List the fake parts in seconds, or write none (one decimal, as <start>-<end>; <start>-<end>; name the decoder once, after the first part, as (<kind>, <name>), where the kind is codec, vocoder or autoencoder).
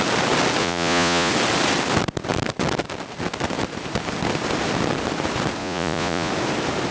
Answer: 0.6-1.3 (vocoder, Vocos); 5.6-6.3